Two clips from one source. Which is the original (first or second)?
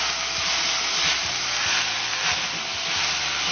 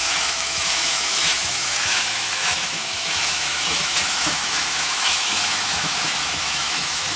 first